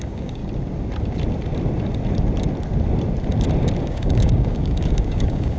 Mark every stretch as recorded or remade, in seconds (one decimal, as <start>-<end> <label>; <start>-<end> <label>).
0.0-0.4 remade; 0.4-3.8 recorded; 3.8-5.6 remade